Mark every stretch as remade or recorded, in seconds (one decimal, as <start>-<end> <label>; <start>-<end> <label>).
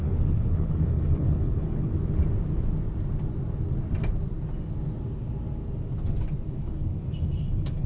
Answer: 0.0-1.9 remade; 1.9-6.5 recorded; 6.5-6.9 remade; 6.9-7.4 recorded; 7.4-7.9 remade